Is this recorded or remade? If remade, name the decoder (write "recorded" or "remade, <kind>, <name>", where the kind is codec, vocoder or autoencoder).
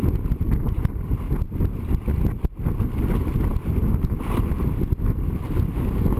recorded